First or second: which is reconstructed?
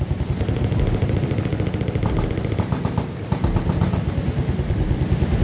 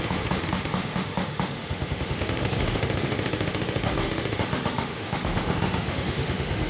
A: second